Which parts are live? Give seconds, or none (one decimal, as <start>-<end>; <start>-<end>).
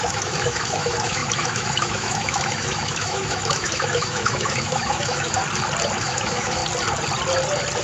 5.4-6.0; 6.6-7.8